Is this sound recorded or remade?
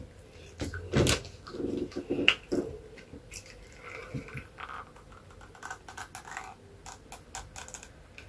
recorded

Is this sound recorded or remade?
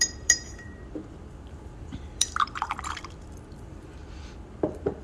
remade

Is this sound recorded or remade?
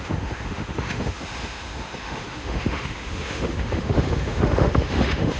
remade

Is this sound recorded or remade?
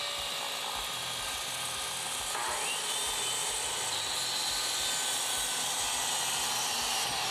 recorded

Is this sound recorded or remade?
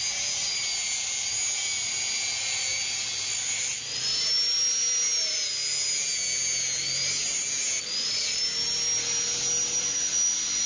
recorded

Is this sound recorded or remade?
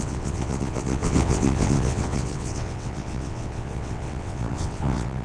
remade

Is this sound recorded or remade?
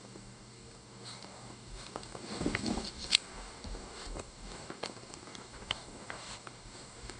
remade